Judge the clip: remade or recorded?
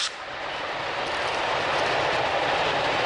recorded